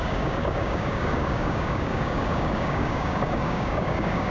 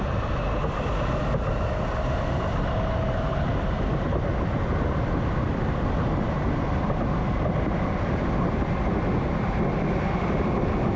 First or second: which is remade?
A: first